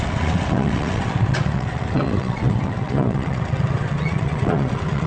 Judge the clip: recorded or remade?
remade